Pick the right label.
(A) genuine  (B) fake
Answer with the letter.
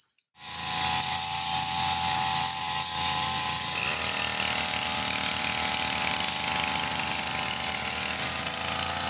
A